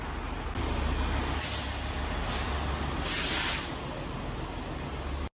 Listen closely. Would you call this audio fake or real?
real